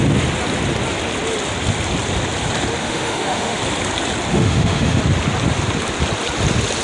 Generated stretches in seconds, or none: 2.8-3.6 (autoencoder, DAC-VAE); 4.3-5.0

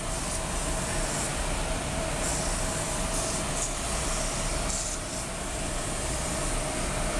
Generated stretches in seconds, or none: none